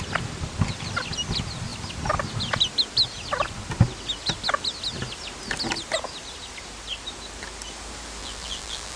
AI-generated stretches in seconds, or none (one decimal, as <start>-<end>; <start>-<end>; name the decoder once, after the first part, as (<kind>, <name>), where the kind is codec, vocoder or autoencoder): 8.2-9.0 (vocoder, BigVGAN v2)